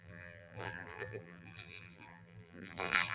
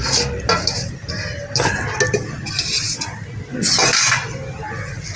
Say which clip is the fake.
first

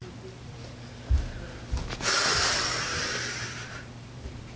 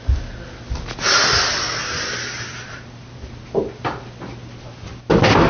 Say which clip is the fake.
first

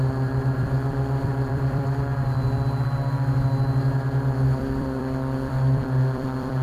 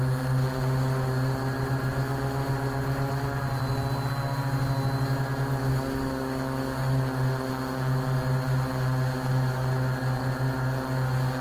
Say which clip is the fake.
first